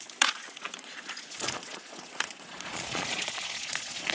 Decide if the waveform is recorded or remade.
remade